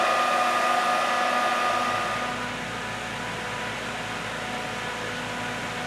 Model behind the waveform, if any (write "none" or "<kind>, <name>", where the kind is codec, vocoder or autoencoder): none